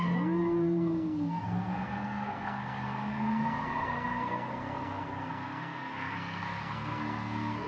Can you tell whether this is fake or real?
fake